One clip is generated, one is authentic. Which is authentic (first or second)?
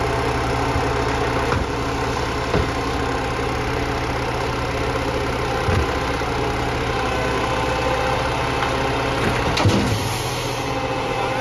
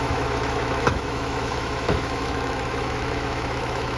first